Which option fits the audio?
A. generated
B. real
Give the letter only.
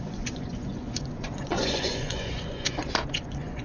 A